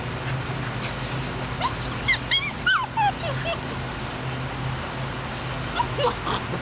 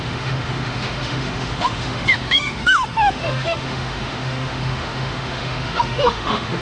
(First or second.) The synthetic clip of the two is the second